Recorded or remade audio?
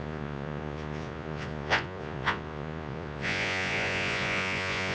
remade